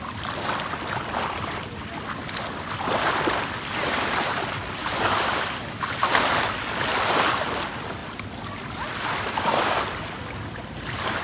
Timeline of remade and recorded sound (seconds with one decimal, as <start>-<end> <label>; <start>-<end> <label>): 0.0-4.8 recorded; 4.8-5.4 remade; 5.4-11.2 recorded